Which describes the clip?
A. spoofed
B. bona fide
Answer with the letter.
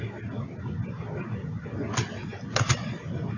B